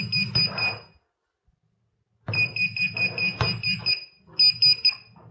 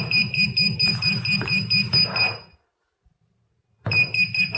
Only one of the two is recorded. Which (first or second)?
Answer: first